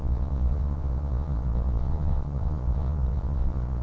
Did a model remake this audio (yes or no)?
yes